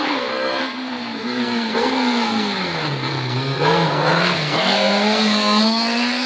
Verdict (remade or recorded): remade